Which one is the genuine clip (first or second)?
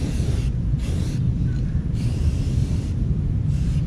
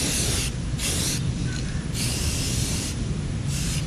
second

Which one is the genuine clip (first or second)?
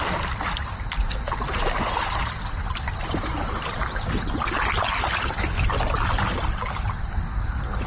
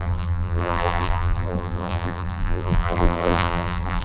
first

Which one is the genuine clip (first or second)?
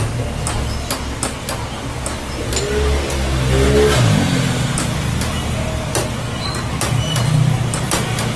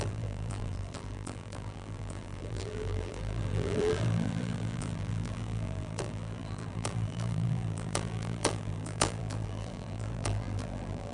first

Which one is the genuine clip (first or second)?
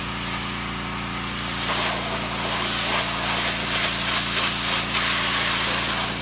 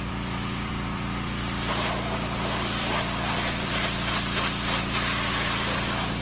first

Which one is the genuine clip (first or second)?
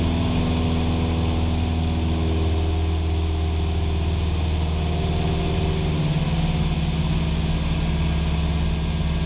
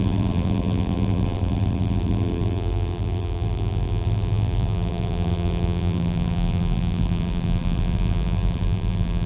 first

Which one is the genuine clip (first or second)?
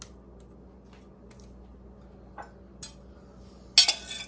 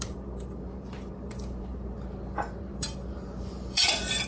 first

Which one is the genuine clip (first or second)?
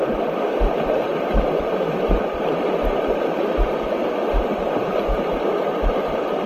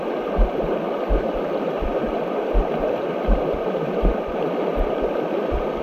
first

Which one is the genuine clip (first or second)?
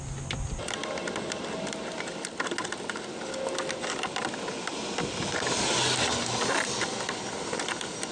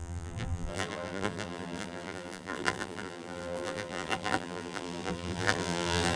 first